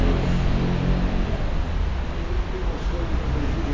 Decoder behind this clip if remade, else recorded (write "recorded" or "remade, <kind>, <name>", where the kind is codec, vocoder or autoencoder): recorded